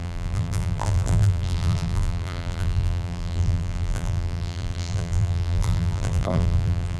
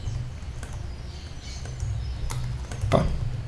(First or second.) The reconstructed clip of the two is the first